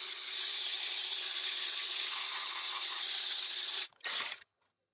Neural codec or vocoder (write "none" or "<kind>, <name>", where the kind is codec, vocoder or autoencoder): vocoder, HiFi-GAN